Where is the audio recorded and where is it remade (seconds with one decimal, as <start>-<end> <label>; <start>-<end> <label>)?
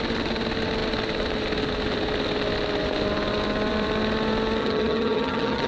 0.0-4.6 recorded; 4.6-5.7 remade